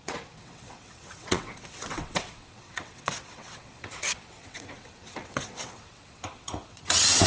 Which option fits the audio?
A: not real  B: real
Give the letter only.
A